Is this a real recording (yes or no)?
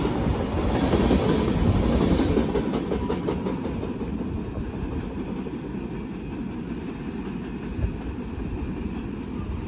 yes